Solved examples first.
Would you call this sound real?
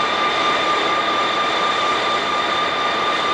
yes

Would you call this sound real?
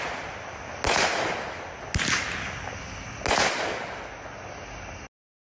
yes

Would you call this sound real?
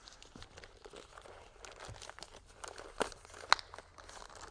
yes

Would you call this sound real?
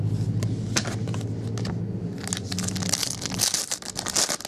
yes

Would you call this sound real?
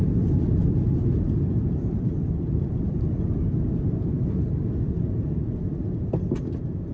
yes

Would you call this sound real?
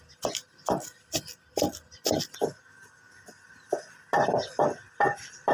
yes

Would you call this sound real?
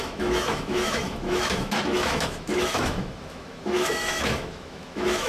no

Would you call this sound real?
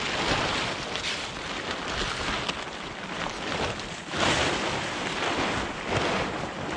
yes